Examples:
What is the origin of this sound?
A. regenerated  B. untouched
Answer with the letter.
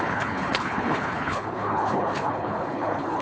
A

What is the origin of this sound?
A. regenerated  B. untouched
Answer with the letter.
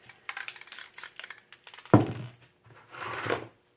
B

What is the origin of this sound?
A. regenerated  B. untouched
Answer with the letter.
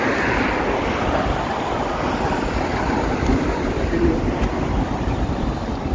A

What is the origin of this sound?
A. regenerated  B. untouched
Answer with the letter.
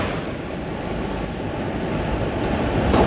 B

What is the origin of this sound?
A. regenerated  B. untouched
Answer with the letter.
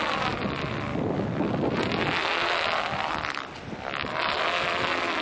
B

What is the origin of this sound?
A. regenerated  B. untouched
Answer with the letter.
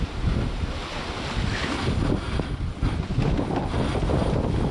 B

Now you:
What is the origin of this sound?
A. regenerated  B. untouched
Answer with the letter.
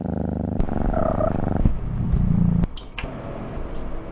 B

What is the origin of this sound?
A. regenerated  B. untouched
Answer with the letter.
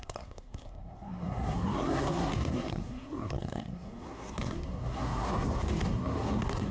A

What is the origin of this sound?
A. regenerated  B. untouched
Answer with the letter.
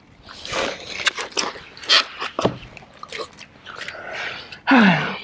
B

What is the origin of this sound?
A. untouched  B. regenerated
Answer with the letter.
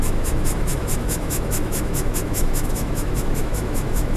B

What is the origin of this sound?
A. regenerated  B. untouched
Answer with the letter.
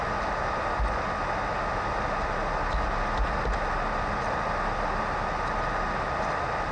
B